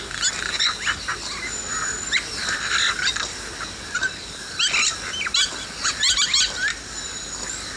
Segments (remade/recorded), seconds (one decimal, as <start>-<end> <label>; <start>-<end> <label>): 0.0-7.8 recorded